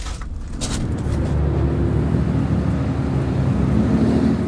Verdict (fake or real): real